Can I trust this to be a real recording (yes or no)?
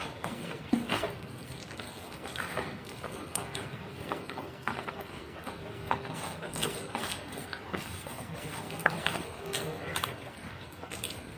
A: no